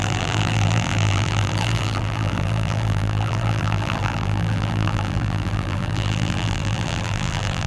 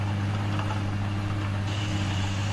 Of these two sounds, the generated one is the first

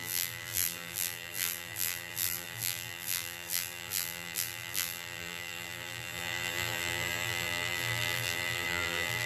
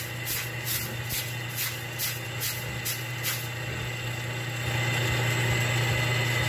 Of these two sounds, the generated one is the first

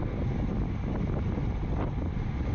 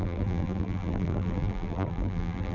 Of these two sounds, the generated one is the second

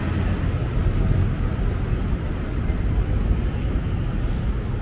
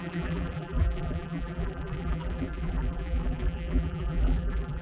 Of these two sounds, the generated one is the second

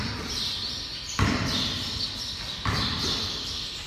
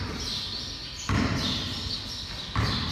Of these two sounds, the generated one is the first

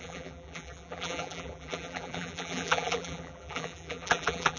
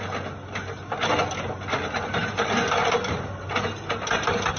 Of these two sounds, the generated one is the first